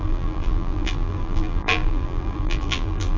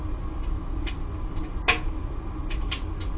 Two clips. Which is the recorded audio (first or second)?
second